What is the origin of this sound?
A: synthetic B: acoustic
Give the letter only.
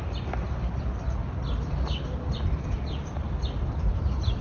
B